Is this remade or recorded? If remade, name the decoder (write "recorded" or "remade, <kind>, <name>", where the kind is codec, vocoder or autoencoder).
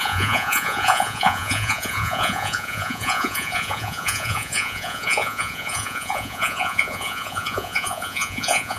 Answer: remade, vocoder, Vocos